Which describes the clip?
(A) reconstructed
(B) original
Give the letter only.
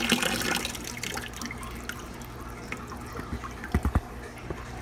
B